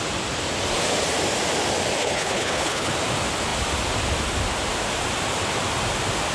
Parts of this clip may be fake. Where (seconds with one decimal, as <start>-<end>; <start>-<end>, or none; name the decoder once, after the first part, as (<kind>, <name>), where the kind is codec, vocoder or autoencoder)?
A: 2.0-2.9 (codec, HILCodec)